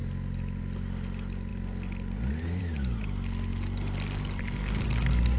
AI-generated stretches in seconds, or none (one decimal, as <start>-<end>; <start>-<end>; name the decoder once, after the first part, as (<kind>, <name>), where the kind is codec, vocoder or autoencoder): none